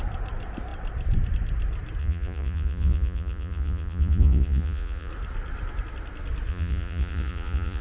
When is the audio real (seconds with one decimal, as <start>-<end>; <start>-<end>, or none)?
0.0-2.0; 5.1-6.5